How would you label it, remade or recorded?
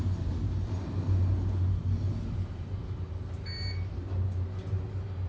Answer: recorded